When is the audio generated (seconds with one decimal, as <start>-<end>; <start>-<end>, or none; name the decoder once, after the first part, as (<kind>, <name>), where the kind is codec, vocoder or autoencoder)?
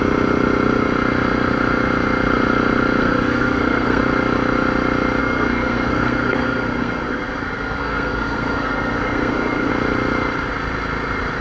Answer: 3.0-4.0 (codec, SNAC); 5.2-9.7